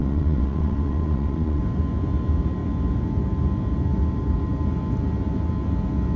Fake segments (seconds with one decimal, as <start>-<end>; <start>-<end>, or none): 0.0-1.6